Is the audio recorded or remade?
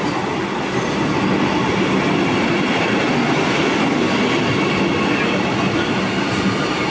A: recorded